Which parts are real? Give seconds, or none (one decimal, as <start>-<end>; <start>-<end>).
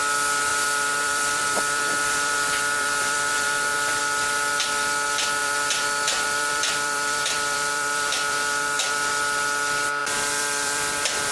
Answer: 0.0-0.5; 4.0-5.4; 9.1-10.0